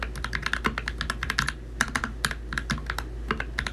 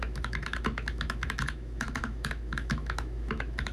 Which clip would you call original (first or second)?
first